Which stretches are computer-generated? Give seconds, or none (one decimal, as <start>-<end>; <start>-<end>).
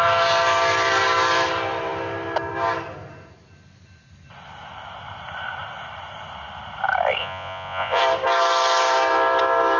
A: 7.2-8.0